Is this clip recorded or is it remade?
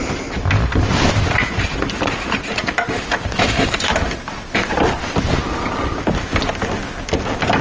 recorded